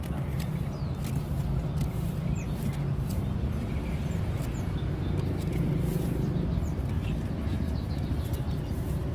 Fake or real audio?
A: real